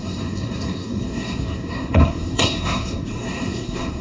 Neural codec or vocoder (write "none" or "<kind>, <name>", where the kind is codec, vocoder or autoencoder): codec, SNAC